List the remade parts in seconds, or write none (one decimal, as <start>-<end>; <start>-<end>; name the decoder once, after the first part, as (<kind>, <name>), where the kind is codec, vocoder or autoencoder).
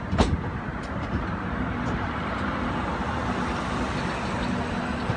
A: 0.7-2.6 (vocoder, BigVGAN v2)